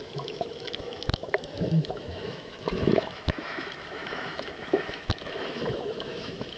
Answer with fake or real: fake